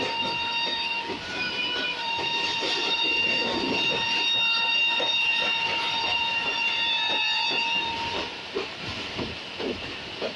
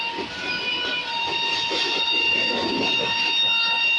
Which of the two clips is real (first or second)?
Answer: second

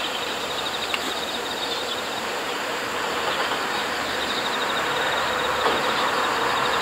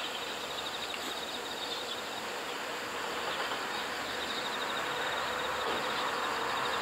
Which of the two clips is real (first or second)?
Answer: second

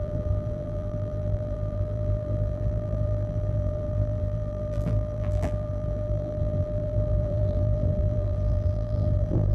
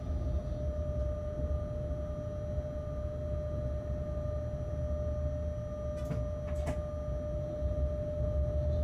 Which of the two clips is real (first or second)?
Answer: second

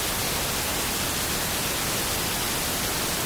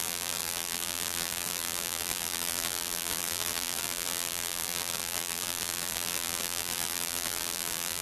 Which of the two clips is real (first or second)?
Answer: first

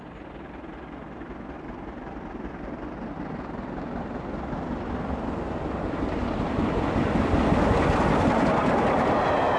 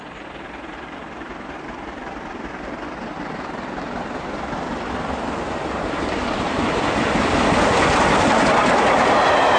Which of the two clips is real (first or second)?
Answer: first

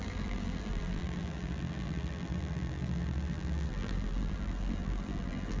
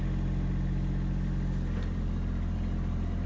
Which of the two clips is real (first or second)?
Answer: second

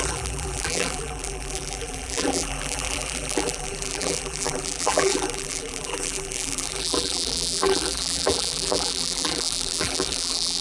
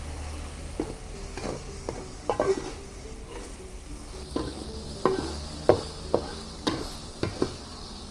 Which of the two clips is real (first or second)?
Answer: second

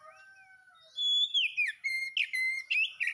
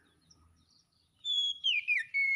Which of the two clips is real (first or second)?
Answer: first